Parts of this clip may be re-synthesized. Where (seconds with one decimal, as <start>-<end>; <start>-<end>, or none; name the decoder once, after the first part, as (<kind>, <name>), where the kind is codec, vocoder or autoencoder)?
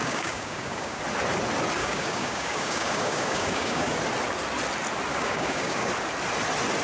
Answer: 0.0-1.0 (codec, DAC); 1.8-3.9; 5.1-5.9